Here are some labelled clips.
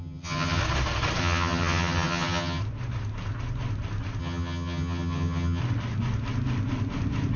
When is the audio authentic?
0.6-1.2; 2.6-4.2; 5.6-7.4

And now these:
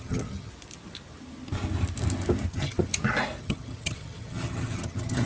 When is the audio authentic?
0.5-2.5; 2.9-3.4

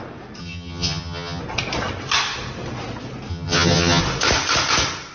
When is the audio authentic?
0.0-0.4; 1.4-3.3; 4.0-5.1